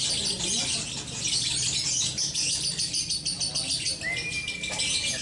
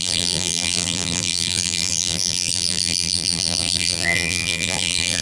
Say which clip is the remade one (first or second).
second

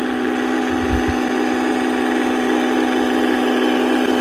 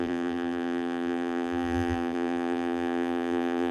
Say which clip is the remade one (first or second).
second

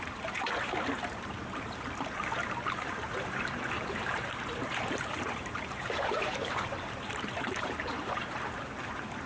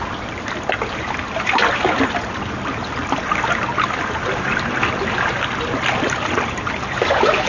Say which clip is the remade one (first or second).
first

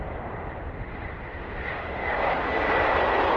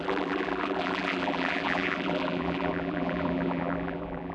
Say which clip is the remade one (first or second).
second